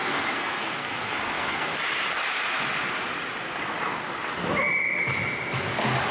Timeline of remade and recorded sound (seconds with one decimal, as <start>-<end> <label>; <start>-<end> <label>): 0.0-1.7 remade; 1.7-6.1 recorded